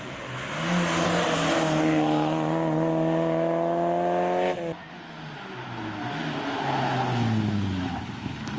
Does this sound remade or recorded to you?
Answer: recorded